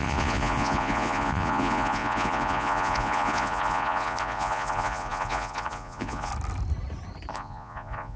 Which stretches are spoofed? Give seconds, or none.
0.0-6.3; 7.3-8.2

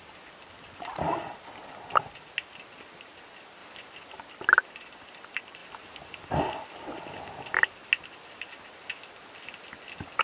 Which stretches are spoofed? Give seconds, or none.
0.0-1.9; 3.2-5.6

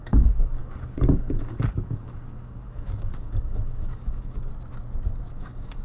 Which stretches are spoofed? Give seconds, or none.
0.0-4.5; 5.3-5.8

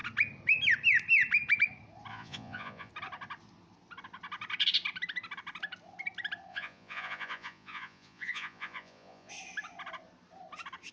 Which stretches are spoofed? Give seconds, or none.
2.1-2.9; 6.5-9.3